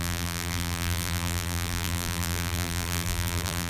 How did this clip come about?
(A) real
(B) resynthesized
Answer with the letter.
B